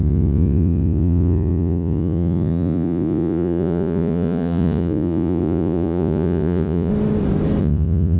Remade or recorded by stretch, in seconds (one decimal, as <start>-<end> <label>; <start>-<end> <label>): 0.0-6.9 remade; 6.9-7.6 recorded; 7.6-8.2 remade